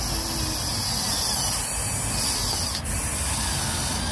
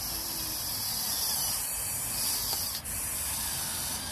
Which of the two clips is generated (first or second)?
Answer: second